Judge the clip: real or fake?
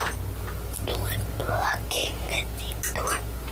real